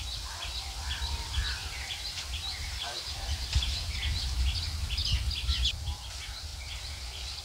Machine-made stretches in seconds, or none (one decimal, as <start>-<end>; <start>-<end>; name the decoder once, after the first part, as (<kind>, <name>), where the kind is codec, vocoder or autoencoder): 1.6-3.9 (vocoder, BigVGAN v2)